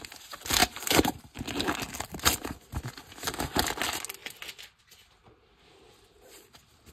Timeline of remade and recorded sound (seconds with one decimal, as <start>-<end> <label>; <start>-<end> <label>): 0.0-0.6 recorded; 0.6-1.2 remade; 1.2-6.9 recorded